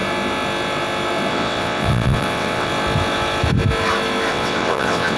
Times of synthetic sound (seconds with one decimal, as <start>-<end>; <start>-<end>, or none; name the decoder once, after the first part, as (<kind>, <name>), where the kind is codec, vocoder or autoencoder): 1.3-2.7 (vocoder, WaveNeXt); 4.3-5.2